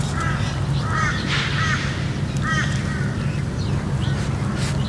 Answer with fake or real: real